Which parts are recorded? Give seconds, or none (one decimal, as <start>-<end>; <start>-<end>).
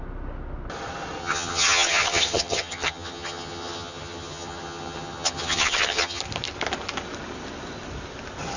0.0-1.2; 6.2-8.6